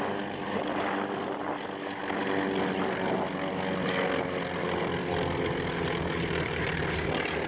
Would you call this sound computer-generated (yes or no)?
no